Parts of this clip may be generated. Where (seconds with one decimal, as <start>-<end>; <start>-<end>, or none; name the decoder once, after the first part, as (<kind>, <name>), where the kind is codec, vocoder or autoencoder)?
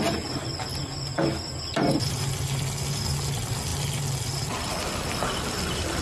none